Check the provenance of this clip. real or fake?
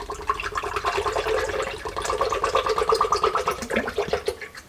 real